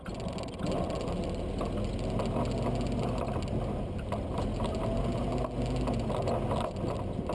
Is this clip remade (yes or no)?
no